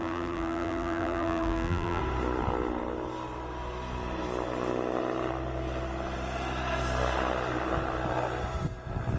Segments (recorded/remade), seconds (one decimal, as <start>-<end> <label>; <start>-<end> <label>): 0.0-2.0 remade; 2.0-9.2 recorded